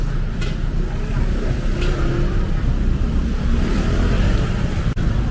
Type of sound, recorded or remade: recorded